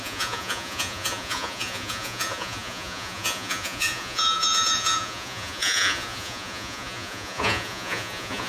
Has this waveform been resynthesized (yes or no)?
yes